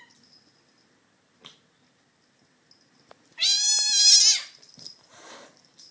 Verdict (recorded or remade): recorded